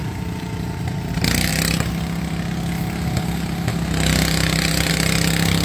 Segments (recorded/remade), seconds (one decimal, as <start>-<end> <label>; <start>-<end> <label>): 0.0-5.6 recorded